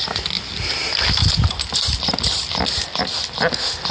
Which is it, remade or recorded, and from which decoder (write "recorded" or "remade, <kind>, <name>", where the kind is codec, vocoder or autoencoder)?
recorded